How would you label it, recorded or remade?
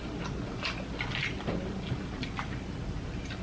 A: recorded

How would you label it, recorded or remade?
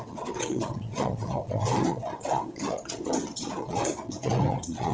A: remade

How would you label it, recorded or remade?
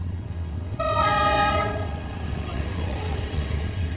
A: remade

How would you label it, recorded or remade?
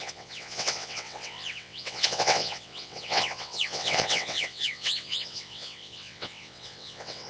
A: remade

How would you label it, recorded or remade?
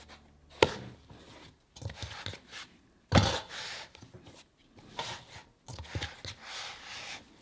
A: recorded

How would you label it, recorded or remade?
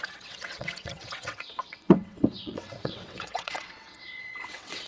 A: remade